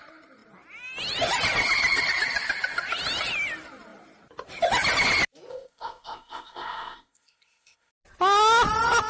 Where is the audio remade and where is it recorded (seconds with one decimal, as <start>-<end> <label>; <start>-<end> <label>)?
0.0-5.5 recorded; 5.5-7.9 remade; 7.9-9.1 recorded